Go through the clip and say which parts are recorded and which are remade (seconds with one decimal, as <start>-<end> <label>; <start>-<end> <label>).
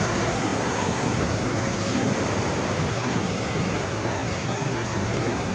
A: 0.0-2.1 remade; 2.1-2.9 recorded; 2.9-5.5 remade